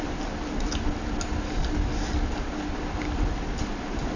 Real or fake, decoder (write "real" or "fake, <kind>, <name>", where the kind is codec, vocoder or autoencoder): real